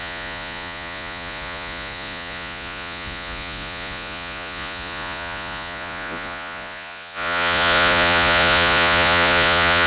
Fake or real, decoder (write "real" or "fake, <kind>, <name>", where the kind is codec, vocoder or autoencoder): fake, vocoder, Vocos